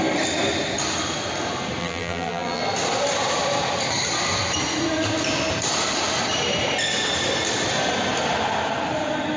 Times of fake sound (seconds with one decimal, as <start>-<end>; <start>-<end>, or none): 1.8-2.6